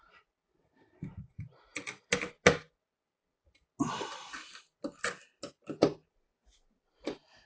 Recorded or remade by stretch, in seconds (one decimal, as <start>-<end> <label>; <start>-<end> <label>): 0.0-5.5 recorded; 5.5-6.1 remade; 6.1-7.5 recorded